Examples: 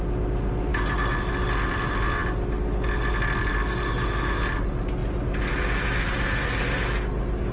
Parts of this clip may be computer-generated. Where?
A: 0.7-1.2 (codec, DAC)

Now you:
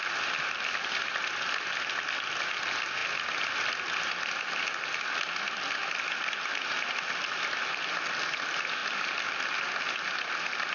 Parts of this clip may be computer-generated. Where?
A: none

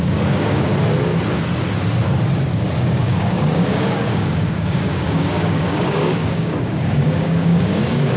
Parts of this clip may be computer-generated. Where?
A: 0.0-0.7 (codec, DAC); 2.8-8.2

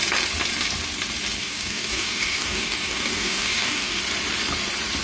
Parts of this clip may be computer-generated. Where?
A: 1.4-4.0 (codec, DAC)

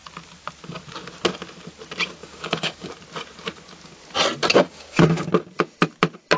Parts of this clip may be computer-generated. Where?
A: 2.2-2.9 (codec, DAC); 4.5-5.3

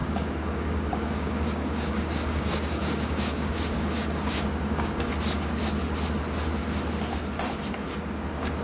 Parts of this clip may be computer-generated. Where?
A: 0.0-5.1 (codec, DAC)